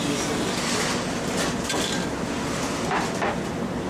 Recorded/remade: recorded